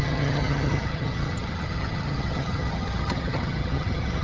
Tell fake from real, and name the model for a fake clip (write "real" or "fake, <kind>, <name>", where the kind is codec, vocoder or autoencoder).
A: fake, vocoder, HiFi-GAN